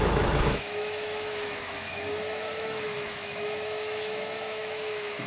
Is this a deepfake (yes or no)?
yes